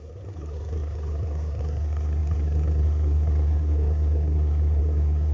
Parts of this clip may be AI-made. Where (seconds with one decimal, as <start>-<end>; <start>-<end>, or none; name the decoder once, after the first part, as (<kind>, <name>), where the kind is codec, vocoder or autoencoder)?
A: 0.0-5.3 (codec, SNAC)